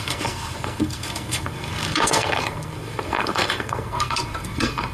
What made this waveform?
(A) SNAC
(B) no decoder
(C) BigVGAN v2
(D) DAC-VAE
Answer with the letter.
A